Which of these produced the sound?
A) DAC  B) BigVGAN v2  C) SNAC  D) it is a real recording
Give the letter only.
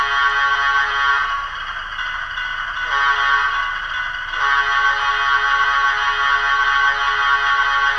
D